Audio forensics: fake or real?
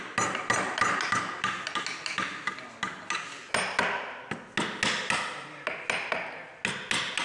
real